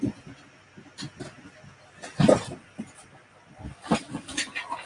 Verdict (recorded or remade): recorded